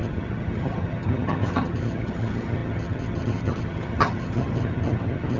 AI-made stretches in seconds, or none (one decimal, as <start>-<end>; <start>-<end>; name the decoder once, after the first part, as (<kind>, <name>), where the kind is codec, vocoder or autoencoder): 0.0-5.4 (vocoder, HiFi-GAN)